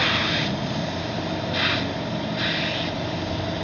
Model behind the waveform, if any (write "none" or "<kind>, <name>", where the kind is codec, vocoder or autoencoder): vocoder, BigVGAN v2